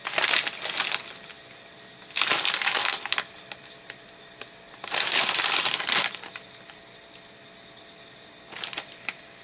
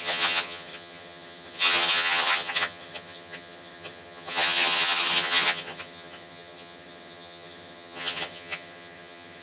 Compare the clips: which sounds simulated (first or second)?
second